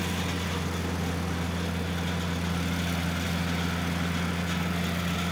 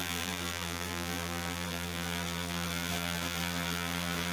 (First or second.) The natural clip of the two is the first